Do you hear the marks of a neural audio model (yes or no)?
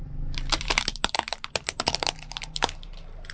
yes